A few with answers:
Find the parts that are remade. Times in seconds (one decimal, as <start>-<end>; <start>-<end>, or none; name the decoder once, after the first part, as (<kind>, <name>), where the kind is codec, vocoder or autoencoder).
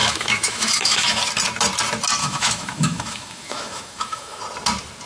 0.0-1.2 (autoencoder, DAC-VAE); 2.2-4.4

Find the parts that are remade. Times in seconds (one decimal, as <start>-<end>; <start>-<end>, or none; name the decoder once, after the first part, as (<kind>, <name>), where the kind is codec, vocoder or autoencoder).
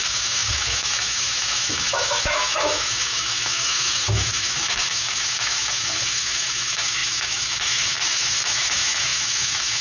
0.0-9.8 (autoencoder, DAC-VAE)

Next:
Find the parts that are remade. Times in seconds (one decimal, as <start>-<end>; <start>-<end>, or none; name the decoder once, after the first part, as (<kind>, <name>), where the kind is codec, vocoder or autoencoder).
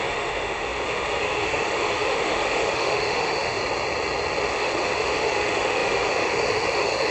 0.0-3.6 (autoencoder, DAC-VAE); 4.5-7.1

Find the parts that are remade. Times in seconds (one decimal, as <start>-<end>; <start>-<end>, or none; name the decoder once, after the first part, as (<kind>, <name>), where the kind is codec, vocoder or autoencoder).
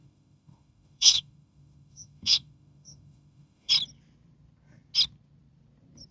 0.0-3.7 (autoencoder, DAC-VAE)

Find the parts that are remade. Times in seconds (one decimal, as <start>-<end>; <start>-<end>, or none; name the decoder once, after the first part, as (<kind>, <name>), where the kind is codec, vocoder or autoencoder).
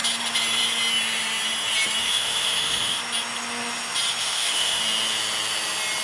2.0-3.0 (autoencoder, DAC-VAE); 4.2-4.8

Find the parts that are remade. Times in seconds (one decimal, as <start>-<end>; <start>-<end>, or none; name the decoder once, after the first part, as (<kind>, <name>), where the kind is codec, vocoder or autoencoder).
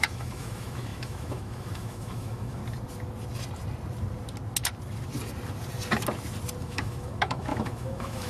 0.0-2.6 (autoencoder, DAC-VAE); 6.6-8.3